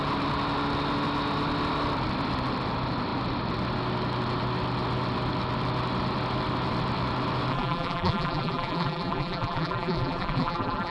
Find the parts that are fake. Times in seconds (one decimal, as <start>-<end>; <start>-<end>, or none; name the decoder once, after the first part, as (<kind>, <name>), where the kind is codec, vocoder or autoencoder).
7.5-10.9 (vocoder, BigVGAN v2)